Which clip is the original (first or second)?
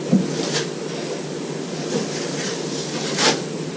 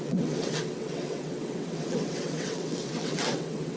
first